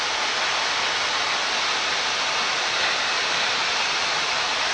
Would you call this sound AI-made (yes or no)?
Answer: no